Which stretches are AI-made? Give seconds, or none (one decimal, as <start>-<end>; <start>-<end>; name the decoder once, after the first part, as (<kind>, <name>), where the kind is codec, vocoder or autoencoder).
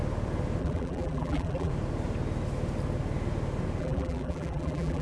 0.6-1.7 (vocoder, BigVGAN v2); 3.8-5.0